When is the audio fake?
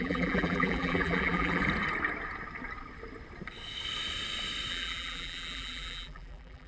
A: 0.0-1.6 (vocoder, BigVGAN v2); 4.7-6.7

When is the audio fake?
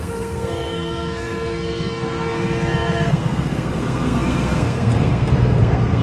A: 0.0-6.0 (codec, SNAC)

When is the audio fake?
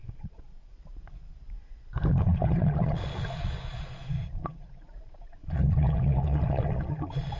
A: 0.0-0.7 (vocoder, Vocos); 2.1-7.4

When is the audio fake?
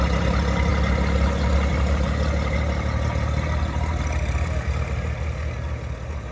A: none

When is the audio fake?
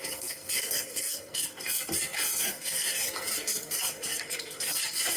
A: 0.0-5.2 (codec, SNAC)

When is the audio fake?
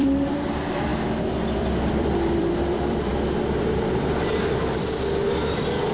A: 0.0-3.1 (vocoder, BigVGAN v2)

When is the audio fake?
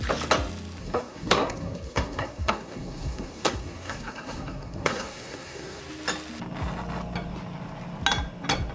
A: 0.8-5.8 (codec, SNAC)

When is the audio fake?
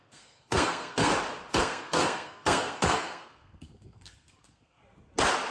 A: 0.0-1.1 (codec, SNAC); 1.6-4.8